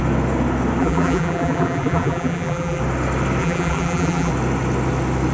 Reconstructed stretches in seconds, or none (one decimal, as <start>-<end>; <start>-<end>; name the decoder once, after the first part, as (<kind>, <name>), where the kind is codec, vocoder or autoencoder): 0.8-2.8 (vocoder, BigVGAN v2); 3.4-4.3

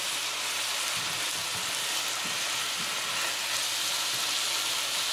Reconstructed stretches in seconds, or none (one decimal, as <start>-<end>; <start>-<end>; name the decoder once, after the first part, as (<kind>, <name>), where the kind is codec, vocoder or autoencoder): none

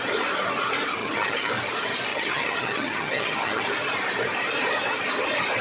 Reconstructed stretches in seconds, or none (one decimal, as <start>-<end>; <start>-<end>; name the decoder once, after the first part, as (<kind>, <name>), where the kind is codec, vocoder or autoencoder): 1.0-1.5 (vocoder, HiFi-GAN); 2.1-3.6

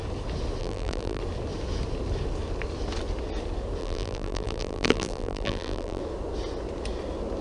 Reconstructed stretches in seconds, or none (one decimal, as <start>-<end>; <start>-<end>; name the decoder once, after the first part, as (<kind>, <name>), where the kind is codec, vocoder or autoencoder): 0.6-1.2 (vocoder, BigVGAN v2); 3.8-6.0

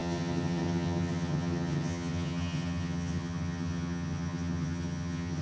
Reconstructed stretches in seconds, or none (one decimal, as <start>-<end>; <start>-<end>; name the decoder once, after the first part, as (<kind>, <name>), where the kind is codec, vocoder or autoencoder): 0.0-5.4 (vocoder, HiFi-GAN)

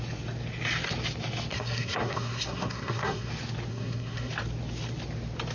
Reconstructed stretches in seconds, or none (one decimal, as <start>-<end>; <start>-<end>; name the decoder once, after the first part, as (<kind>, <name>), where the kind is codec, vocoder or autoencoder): 1.5-3.3 (codec, SNAC); 3.7-4.3